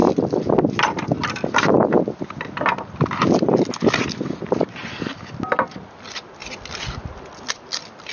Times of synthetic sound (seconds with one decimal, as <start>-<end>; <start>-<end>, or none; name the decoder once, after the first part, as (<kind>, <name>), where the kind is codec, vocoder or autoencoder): none